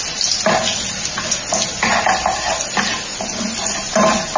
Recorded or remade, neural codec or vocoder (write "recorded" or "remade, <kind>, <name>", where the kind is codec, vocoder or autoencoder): recorded